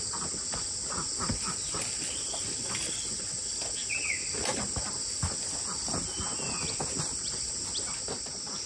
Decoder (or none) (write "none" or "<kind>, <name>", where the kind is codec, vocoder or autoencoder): none